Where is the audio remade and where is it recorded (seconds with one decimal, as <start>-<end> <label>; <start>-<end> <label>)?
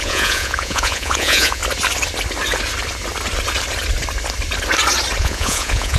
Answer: 0.0-1.6 remade; 1.6-5.2 recorded; 5.2-6.0 remade